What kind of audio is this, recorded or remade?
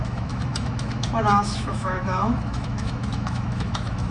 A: remade